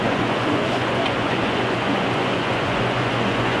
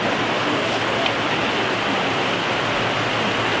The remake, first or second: first